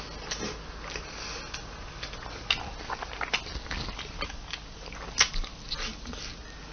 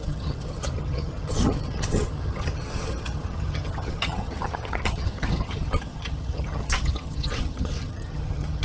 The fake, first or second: second